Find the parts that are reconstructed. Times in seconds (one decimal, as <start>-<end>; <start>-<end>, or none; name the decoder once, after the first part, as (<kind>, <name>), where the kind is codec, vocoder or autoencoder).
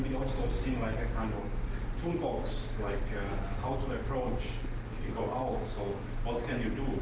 none